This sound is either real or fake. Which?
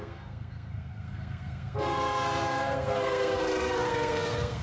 fake